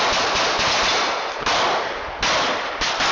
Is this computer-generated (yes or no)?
no